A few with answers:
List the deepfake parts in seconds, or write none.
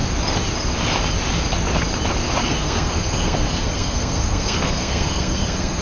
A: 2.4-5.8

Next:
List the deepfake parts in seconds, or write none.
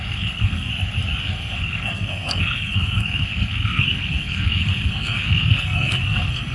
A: 0.0-0.7; 1.2-6.5